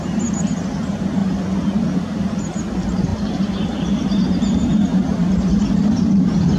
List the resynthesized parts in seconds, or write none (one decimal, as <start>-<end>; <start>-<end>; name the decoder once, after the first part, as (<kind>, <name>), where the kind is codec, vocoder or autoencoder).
0.0-1.2 (vocoder, BigVGAN v2); 2.0-6.6